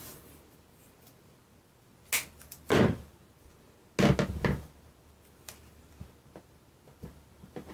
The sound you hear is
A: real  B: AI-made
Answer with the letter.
A